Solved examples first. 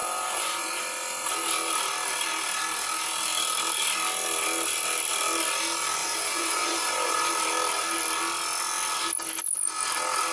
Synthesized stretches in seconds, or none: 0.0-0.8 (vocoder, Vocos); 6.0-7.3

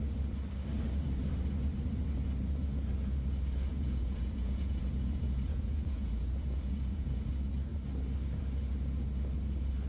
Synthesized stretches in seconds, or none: 3.7-7.3 (vocoder, Vocos)

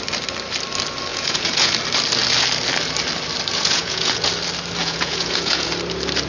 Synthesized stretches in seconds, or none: 1.1-1.7 (vocoder, Vocos); 3.5-4.3; 4.8-5.7

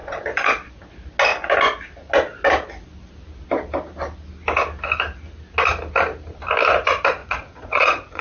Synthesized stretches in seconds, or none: 0.0-0.7 (vocoder, Vocos); 7.2-8.2

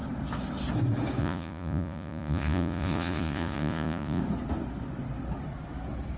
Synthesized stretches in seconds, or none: 1.2-4.2 (vocoder, Vocos)

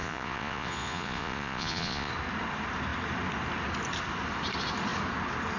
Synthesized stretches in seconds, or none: 0.0-2.1 (vocoder, Vocos)